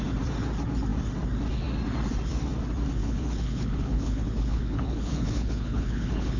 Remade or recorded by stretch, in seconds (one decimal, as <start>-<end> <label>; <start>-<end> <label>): 0.0-3.0 recorded; 3.0-6.4 remade